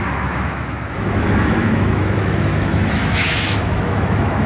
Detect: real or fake fake